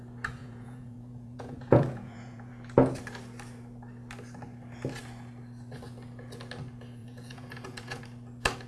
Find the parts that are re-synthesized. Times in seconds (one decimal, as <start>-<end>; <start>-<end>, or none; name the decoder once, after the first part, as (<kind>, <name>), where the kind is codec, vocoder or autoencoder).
0.4-2.5 (vocoder, Vocos); 7.0-8.0